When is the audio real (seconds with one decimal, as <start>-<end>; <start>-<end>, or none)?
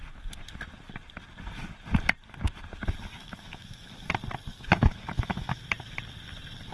0.0-3.2; 4.1-4.5; 5.6-6.7